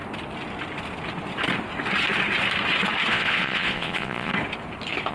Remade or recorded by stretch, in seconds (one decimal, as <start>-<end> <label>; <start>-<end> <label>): 0.0-3.1 recorded; 3.1-4.3 remade; 4.3-5.1 recorded